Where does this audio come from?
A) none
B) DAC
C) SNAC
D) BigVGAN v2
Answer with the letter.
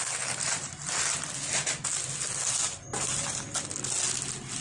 A